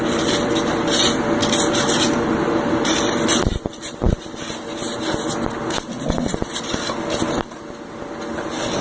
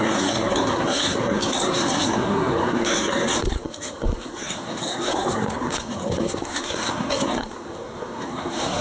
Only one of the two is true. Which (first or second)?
first